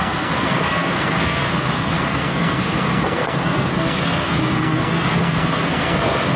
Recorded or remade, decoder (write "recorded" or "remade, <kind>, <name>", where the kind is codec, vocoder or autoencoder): remade, codec, SNAC